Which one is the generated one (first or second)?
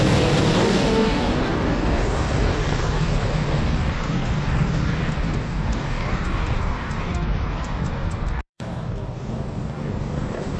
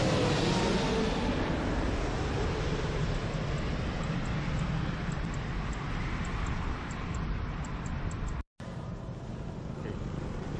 first